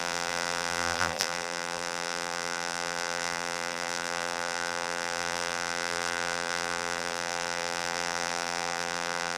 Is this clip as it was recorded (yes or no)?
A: no